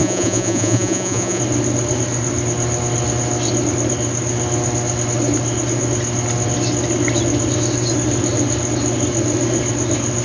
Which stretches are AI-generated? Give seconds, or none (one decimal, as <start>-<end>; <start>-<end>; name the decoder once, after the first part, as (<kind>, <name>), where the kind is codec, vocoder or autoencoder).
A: 0.0-1.4 (vocoder, Vocos)